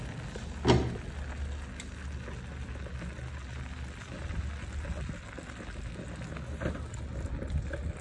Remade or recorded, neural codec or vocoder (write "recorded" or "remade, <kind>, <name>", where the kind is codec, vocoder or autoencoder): recorded